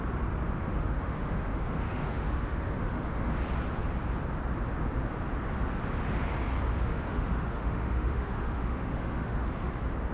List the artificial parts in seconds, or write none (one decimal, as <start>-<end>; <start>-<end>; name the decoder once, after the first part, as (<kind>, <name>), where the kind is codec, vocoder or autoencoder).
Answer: 0.6-3.3 (autoencoder, DAC-VAE); 6.7-9.7